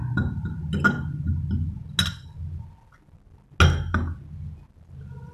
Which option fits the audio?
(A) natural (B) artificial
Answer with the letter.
A